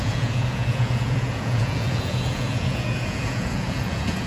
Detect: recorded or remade remade